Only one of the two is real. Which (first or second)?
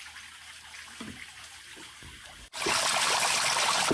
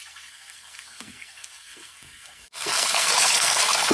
first